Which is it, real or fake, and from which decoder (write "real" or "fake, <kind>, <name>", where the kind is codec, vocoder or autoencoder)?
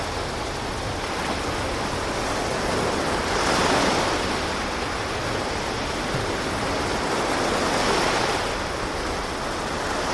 real